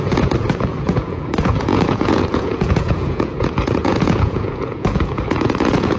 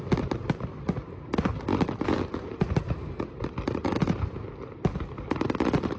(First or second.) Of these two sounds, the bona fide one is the second